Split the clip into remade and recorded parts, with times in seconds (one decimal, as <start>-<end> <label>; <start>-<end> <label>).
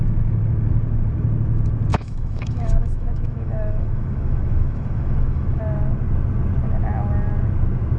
0.0-1.9 recorded; 1.9-5.6 remade; 5.6-8.0 recorded